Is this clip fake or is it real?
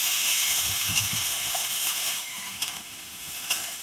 fake